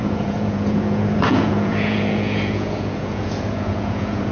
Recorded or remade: remade